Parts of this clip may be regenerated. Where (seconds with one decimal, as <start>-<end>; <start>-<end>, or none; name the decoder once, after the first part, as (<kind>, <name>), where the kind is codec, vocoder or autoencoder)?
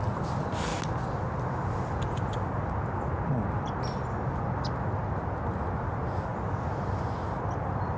none